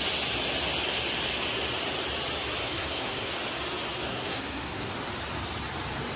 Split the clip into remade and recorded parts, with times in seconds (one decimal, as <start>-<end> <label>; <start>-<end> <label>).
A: 0.0-2.6 recorded; 2.6-3.3 remade; 3.3-4.1 recorded; 4.1-4.9 remade; 4.9-6.2 recorded

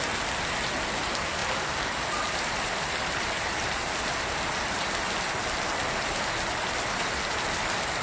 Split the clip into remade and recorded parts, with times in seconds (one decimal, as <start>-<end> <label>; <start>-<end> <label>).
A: 0.0-1.4 recorded; 1.4-3.9 remade; 3.9-8.0 recorded

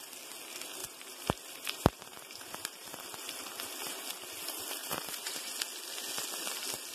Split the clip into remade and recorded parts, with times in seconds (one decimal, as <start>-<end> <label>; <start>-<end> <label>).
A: 0.0-0.8 recorded; 0.8-3.0 remade; 3.0-4.8 recorded; 4.8-5.5 remade; 5.5-6.9 recorded

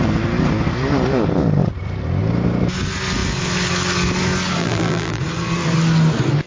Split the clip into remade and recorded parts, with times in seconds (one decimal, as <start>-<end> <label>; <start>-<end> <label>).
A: 0.0-4.6 recorded; 4.6-5.2 remade; 5.2-6.5 recorded

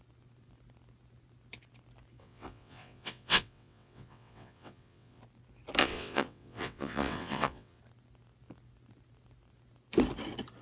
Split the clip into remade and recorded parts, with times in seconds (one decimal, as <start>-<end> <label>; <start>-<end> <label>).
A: 0.0-2.2 recorded; 2.2-5.2 remade; 5.2-5.8 recorded; 5.8-7.8 remade; 7.8-10.6 recorded

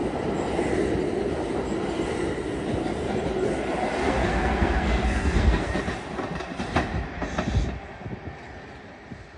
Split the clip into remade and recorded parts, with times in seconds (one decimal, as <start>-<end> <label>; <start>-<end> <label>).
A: 0.0-4.0 recorded; 4.0-5.8 remade; 5.8-9.4 recorded

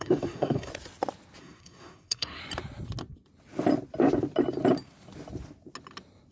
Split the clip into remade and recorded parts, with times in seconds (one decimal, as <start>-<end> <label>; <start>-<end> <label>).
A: 0.0-0.7 remade; 0.7-1.4 recorded; 1.4-2.4 remade; 2.4-6.3 recorded